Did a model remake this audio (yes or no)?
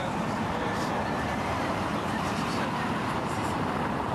yes